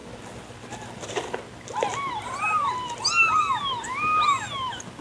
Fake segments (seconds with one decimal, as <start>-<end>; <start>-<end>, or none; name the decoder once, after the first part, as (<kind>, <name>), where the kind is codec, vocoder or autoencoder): none